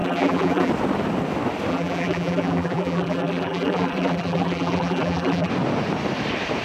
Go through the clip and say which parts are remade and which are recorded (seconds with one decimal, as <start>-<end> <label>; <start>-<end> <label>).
0.0-0.7 remade; 0.7-1.7 recorded; 1.7-5.5 remade; 5.5-6.6 recorded

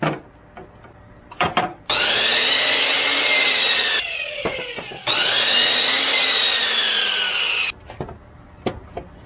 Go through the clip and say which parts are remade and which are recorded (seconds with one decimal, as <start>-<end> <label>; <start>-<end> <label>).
0.0-9.3 recorded

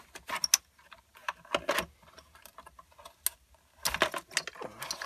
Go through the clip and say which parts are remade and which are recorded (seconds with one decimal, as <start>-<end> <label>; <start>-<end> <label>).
0.0-5.1 recorded

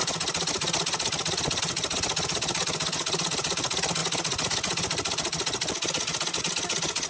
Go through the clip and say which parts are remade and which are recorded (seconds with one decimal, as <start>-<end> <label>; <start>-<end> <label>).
0.0-7.1 recorded

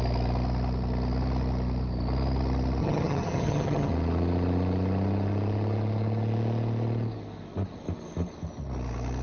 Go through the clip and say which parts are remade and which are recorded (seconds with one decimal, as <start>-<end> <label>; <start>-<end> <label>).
0.0-2.8 recorded; 2.8-3.9 remade; 3.9-9.2 recorded

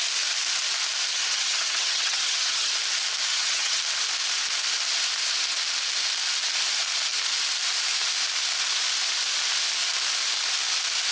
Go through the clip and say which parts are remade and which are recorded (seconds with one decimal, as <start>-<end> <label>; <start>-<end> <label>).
0.0-1.1 recorded; 1.1-2.7 remade; 2.7-3.3 recorded; 3.3-3.8 remade; 3.8-11.1 recorded

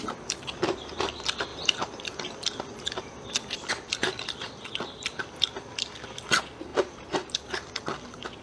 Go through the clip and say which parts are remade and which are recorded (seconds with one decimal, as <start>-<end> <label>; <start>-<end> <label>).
0.0-6.7 recorded; 6.7-7.3 remade; 7.3-8.4 recorded